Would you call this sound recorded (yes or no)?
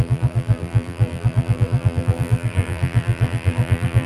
no